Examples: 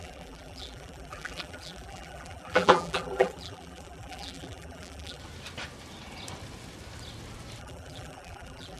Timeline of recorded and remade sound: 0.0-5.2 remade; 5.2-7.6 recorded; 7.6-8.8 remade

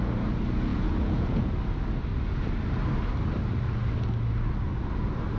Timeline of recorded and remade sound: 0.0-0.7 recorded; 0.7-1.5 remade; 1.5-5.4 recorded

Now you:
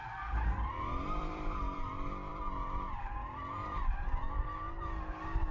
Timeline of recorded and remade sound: 0.0-5.5 remade